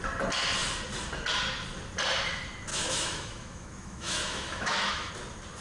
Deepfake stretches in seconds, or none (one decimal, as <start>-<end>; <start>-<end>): 2.7-5.1

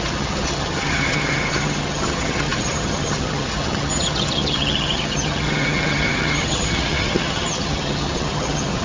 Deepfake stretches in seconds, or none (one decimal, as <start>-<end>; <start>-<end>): 0.0-8.8

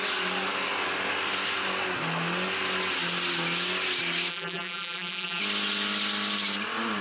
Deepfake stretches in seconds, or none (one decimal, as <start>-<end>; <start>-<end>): 4.3-5.4

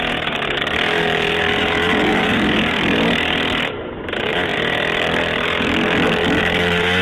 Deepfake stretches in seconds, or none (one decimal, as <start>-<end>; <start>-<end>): 0.0-7.0

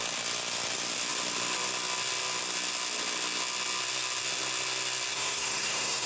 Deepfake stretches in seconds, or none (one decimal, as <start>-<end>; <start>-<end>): 5.1-6.1

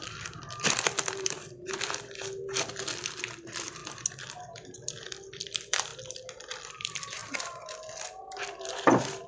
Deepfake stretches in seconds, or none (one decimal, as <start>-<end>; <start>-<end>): 0.0-3.8; 4.3-5.9; 6.7-7.2; 8.8-9.3

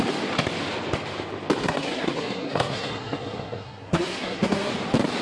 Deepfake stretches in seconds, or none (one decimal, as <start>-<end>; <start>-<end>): 1.6-4.7